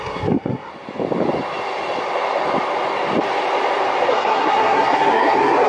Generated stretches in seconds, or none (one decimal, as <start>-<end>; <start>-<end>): 0.0-0.7; 4.1-5.7